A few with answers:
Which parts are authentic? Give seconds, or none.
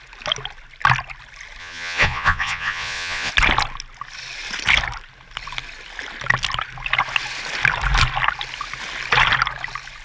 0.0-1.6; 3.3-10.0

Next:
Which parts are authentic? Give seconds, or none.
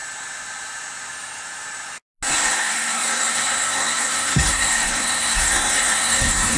0.0-2.3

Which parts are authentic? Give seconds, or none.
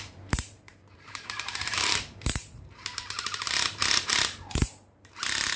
none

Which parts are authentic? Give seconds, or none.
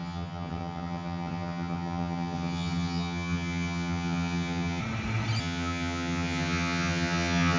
4.8-5.4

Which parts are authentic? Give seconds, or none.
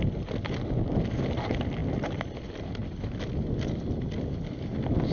0.0-5.1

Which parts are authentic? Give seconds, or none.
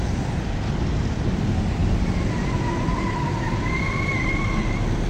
0.0-5.1